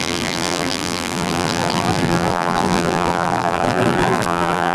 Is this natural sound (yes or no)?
no